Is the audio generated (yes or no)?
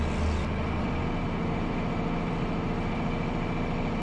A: no